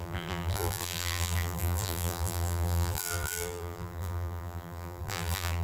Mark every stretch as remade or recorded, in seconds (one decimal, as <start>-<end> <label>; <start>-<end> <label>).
0.0-5.6 remade